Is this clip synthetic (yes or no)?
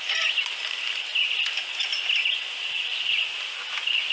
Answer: no